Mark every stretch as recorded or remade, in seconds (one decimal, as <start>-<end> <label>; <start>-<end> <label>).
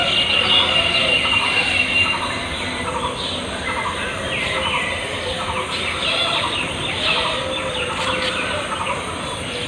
0.0-9.7 recorded